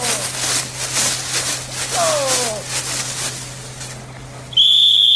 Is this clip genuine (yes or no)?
yes